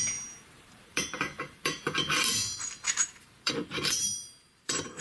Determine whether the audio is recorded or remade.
remade